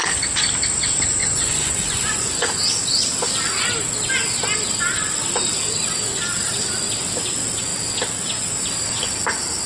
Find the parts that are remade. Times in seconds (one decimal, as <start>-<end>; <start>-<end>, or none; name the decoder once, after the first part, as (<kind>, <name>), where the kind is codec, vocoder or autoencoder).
1.2-2.6 (vocoder, Vocos)